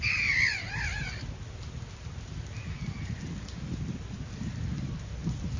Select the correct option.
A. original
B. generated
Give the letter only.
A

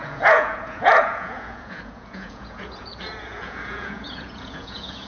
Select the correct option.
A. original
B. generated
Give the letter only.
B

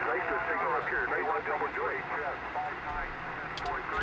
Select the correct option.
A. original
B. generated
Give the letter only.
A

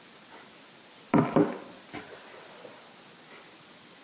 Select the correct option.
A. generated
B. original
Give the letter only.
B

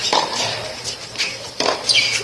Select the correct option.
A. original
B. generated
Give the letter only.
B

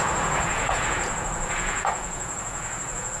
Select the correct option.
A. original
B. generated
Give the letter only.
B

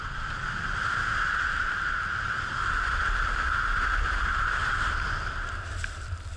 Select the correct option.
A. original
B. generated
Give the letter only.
B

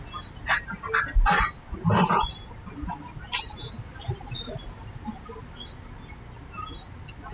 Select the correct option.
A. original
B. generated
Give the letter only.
A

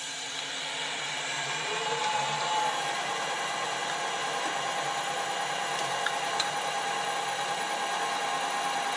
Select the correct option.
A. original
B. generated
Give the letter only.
B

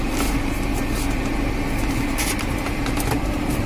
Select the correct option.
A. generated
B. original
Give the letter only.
B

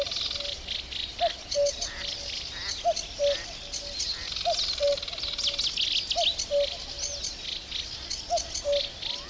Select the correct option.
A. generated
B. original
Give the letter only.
B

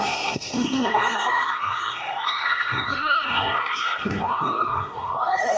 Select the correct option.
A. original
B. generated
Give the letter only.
B